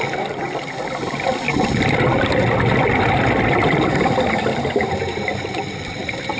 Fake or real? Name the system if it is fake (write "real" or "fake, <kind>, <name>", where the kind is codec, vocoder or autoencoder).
real